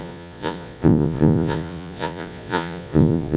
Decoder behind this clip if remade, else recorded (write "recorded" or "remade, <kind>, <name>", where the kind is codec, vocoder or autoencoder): remade, vocoder, Vocos